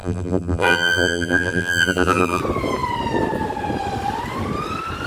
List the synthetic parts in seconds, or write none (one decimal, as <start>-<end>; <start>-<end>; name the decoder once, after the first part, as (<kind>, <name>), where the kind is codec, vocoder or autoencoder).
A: 0.0-2.4 (vocoder, BigVGAN v2)